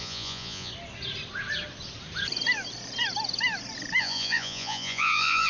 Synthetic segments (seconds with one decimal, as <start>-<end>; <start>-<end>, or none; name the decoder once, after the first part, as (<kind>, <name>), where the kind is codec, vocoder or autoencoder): 0.0-0.7 (vocoder, Vocos); 4.0-5.5